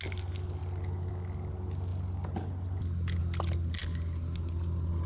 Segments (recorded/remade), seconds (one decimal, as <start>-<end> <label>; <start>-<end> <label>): 0.0-5.1 recorded